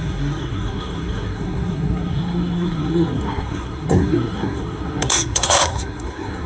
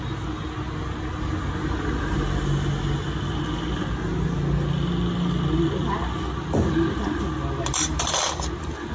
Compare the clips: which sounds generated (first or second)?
first